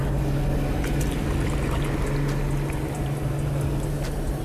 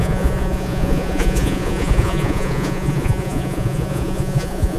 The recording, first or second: first